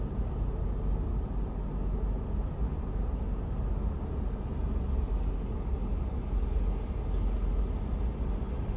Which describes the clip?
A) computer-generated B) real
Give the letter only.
B